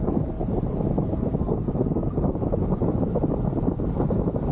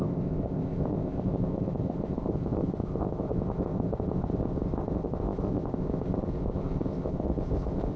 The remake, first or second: second